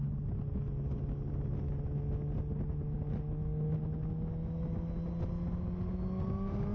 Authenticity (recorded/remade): recorded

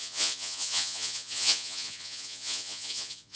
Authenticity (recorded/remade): remade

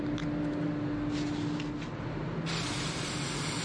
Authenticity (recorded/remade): recorded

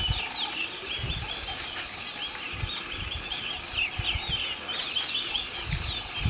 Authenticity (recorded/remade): recorded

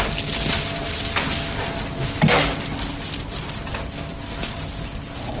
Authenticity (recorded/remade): recorded